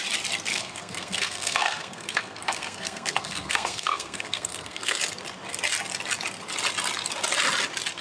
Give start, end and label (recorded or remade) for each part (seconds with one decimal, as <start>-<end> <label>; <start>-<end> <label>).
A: 0.0-0.5 recorded; 0.5-5.0 remade; 5.0-8.0 recorded